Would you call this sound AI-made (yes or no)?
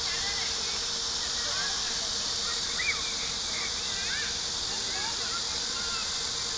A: no